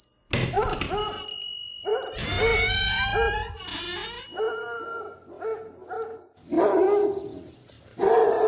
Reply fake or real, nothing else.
real